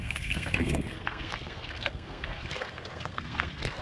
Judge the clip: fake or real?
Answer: fake